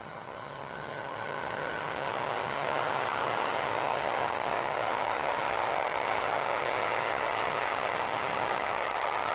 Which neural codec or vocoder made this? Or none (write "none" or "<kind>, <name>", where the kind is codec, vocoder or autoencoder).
vocoder, HiFi-GAN